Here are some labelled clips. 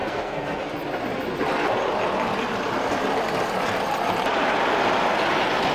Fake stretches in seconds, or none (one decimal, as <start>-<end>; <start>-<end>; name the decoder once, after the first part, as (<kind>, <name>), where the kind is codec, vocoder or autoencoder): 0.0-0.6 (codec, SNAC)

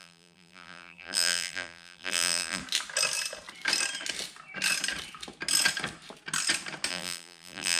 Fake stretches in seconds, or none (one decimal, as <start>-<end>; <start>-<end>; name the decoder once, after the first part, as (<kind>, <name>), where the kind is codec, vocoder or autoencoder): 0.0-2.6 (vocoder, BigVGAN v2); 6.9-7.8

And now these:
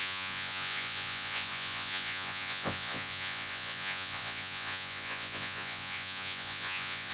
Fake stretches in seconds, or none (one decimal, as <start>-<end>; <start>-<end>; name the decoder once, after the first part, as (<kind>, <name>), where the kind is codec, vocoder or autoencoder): 0.0-7.1 (vocoder, Vocos)